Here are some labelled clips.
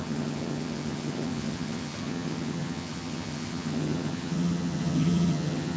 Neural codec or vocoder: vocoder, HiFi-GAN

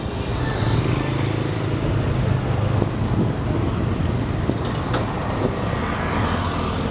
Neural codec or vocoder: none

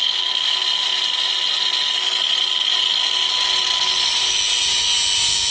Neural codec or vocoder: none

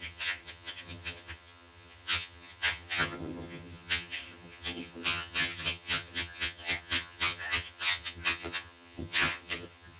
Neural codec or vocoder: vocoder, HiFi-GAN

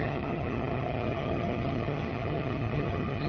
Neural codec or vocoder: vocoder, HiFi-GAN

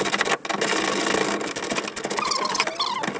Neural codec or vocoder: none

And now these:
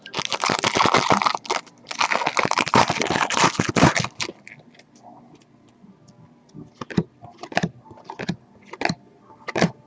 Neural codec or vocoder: none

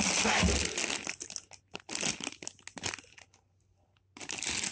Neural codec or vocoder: none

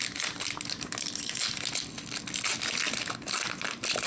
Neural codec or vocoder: none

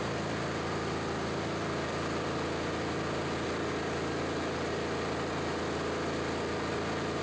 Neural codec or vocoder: none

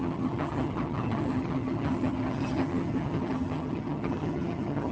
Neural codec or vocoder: vocoder, HiFi-GAN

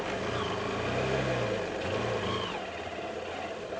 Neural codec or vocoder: none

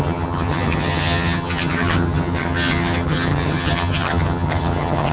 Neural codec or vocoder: vocoder, HiFi-GAN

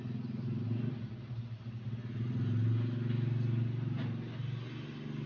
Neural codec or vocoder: none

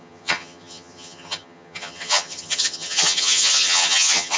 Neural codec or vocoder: vocoder, HiFi-GAN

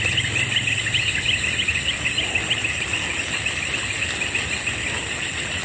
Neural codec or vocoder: none